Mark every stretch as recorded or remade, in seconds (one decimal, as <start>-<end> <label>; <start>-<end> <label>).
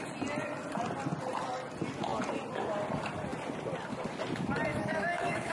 0.0-4.7 recorded; 4.7-5.5 remade